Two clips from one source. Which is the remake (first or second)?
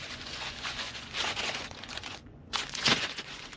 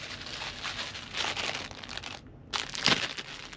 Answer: first